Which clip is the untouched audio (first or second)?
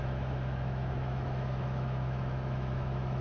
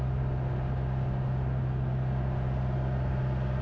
second